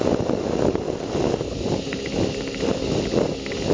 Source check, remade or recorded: recorded